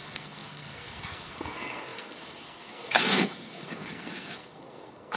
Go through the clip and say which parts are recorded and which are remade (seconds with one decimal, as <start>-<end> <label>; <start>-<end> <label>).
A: 0.0-5.2 remade